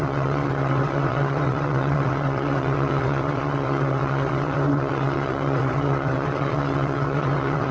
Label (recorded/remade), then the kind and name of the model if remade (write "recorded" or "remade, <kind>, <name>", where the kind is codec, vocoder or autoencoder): remade, vocoder, WaveNeXt